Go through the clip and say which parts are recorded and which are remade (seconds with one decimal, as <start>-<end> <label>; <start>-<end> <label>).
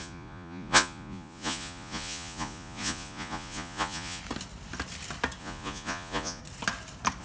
0.0-4.2 remade; 4.2-5.4 recorded; 5.4-6.4 remade; 6.4-7.2 recorded